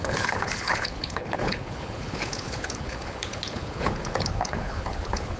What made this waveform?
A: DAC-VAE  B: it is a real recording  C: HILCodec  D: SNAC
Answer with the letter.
C